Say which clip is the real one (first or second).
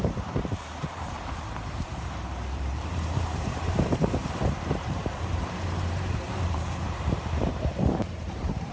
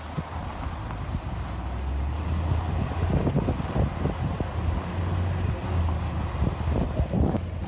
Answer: second